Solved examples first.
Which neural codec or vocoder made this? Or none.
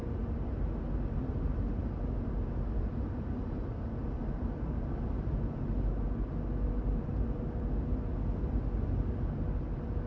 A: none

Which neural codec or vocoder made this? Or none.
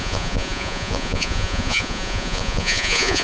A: vocoder, Vocos